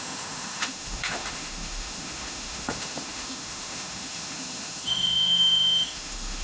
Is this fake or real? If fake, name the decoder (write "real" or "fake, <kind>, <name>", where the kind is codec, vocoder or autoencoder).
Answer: fake, autoencoder, DAC-VAE